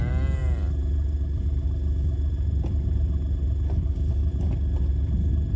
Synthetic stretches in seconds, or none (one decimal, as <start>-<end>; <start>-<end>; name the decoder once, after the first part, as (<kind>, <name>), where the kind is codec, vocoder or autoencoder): none